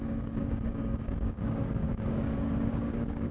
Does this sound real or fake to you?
fake